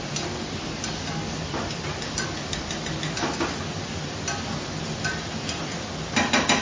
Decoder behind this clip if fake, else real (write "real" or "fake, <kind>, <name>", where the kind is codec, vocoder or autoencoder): real